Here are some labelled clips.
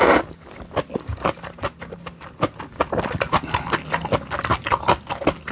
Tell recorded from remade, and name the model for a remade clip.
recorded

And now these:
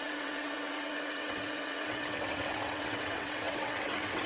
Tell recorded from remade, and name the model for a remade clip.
remade, vocoder, WaveNeXt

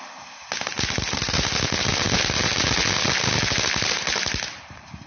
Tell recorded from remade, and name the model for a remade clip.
recorded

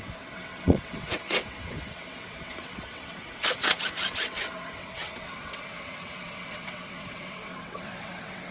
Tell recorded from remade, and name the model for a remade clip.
remade, vocoder, WaveNeXt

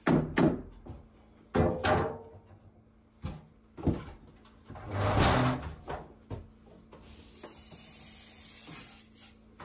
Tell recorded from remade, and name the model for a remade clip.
recorded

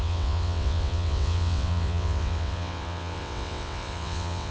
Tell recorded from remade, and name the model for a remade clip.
remade, vocoder, WaveNeXt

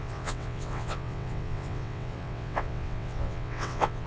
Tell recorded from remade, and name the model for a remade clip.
remade, vocoder, WaveNeXt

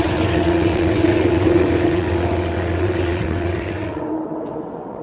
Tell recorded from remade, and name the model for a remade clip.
remade, vocoder, WaveNeXt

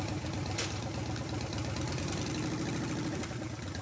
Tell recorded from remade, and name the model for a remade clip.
recorded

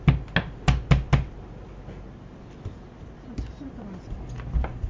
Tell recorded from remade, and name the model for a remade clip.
recorded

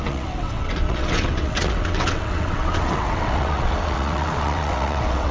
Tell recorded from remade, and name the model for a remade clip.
remade, vocoder, WaveNeXt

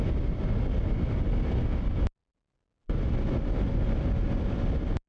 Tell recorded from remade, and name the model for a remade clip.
recorded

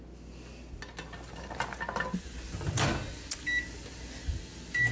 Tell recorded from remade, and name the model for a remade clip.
recorded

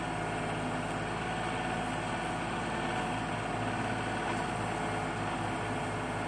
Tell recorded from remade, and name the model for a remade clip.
recorded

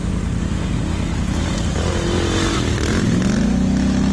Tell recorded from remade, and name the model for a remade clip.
recorded